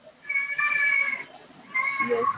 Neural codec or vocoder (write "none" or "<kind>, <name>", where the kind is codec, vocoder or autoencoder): none